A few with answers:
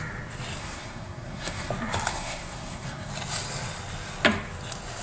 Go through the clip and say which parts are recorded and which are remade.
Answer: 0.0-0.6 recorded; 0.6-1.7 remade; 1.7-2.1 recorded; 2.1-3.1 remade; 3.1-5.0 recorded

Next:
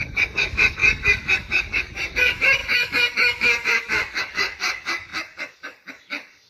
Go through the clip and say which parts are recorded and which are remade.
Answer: 0.0-6.5 remade

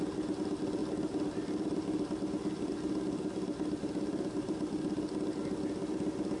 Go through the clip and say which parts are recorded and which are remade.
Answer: 0.0-6.4 recorded

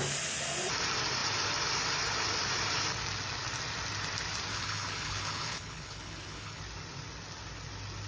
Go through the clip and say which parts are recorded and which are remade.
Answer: 0.0-4.5 recorded; 4.5-6.6 remade; 6.6-8.1 recorded